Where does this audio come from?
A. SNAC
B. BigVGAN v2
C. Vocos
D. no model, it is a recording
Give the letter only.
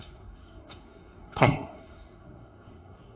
A